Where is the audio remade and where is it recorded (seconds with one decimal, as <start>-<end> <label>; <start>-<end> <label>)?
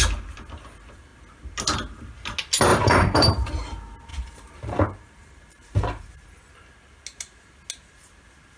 0.0-2.7 recorded; 2.7-3.5 remade; 3.5-4.1 recorded; 4.1-6.1 remade; 6.1-8.6 recorded